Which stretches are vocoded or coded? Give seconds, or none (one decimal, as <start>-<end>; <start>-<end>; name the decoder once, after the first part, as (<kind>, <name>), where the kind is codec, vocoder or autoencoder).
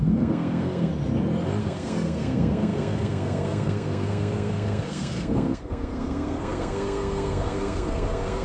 0.0-0.9 (codec, SNAC); 1.6-8.4